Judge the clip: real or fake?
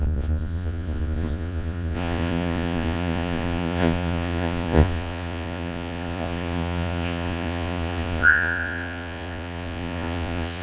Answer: fake